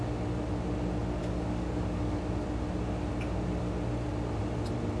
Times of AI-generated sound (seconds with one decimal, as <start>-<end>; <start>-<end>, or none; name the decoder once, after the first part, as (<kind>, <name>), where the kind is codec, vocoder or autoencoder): 1.2-2.2 (codec, DAC)